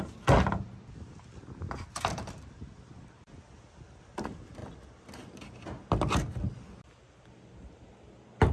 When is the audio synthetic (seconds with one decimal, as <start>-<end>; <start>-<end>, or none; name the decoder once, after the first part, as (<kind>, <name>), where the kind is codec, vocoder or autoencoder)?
none